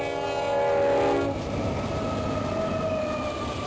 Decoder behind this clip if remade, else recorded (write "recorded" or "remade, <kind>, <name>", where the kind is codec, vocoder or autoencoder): recorded